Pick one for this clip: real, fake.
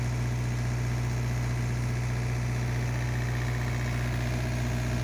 real